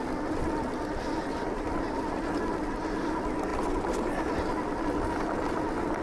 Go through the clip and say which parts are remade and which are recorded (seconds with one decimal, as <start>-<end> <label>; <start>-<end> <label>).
0.0-6.0 recorded